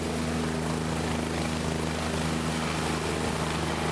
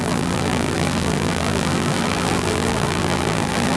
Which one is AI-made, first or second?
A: second